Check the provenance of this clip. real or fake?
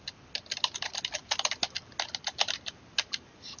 real